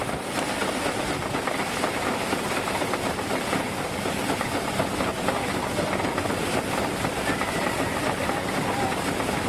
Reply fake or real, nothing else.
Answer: real